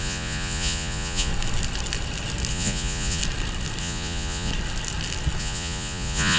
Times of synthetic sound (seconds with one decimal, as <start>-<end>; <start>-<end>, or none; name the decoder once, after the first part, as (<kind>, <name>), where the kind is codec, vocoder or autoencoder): 0.0-1.3 (vocoder, Vocos); 2.5-3.2; 3.8-4.5; 5.4-6.4